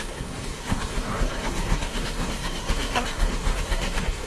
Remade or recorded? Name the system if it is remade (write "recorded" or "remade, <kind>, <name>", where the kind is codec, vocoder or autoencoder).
remade, codec, SNAC